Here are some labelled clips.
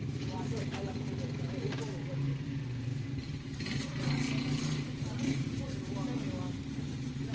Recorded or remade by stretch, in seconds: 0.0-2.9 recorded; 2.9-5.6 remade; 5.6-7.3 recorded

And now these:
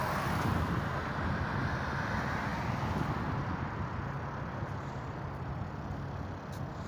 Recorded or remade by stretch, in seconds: 0.0-6.9 recorded